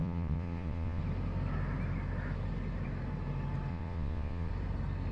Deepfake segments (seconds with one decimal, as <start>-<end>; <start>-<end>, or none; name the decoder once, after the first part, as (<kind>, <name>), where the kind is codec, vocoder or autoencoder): 0.0-1.0 (vocoder, Vocos); 3.7-4.5